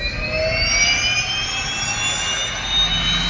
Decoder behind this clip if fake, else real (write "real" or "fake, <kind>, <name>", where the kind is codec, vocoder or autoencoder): real